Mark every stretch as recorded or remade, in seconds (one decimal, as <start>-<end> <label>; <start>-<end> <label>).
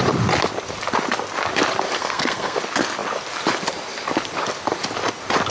0.0-2.0 recorded; 2.0-2.6 remade; 2.6-5.5 recorded